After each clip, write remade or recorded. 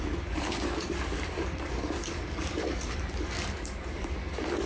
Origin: remade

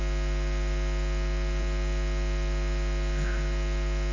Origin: recorded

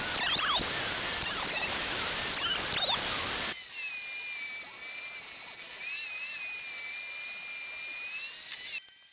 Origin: recorded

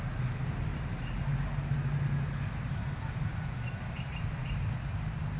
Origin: recorded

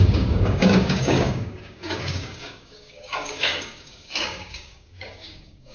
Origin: remade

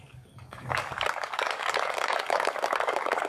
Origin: remade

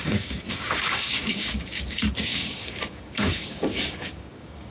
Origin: remade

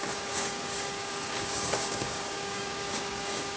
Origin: remade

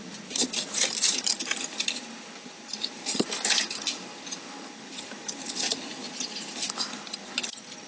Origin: recorded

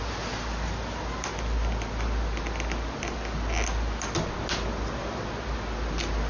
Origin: recorded